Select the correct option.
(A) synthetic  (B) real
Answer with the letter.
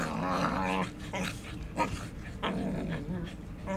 B